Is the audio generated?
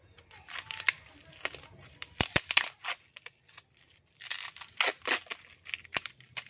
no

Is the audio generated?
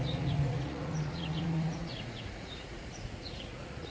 yes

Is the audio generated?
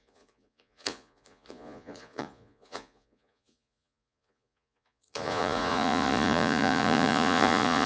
yes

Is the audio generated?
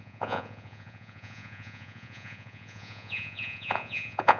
yes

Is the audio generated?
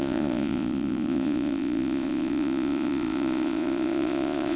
yes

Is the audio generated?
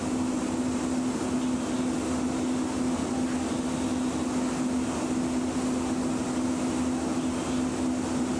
no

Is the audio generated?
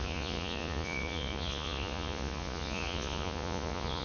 yes